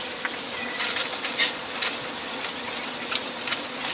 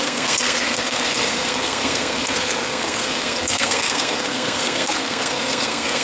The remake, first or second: second